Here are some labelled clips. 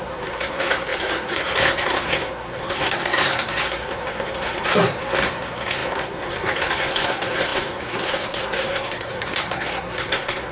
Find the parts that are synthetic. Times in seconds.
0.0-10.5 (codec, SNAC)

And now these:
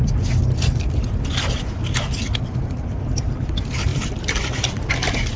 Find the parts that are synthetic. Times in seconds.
3.9-4.9 (vocoder, BigVGAN v2)